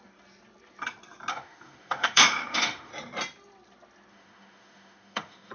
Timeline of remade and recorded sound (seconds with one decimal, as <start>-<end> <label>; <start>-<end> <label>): 0.0-1.3 recorded; 1.3-2.9 remade; 2.9-4.1 recorded; 4.1-5.5 remade